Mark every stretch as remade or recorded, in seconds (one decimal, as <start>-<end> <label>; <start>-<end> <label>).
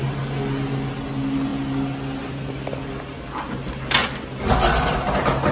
0.0-5.5 recorded